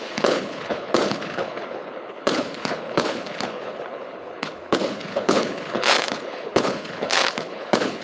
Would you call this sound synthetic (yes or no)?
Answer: yes